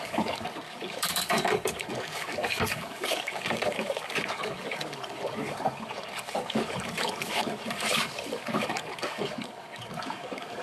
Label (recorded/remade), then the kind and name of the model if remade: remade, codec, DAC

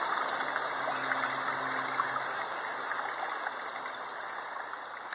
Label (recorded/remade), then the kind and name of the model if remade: recorded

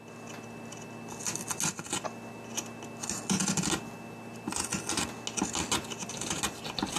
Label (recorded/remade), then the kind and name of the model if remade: recorded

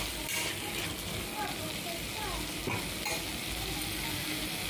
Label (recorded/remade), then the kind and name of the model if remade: recorded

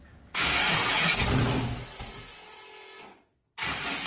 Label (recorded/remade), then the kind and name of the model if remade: recorded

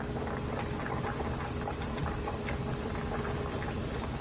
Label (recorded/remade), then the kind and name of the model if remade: recorded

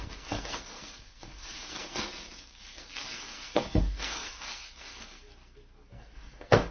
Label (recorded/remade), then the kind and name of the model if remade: remade, codec, SNAC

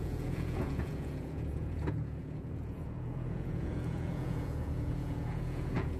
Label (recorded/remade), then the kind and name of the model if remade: remade, vocoder, Vocos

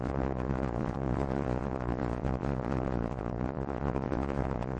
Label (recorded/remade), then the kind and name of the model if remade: remade, vocoder, Vocos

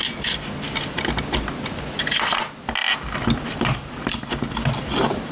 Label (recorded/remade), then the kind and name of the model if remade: recorded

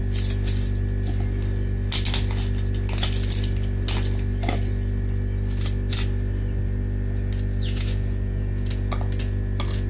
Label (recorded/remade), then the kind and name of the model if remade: recorded